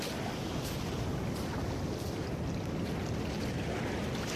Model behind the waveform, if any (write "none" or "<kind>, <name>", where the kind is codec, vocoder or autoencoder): none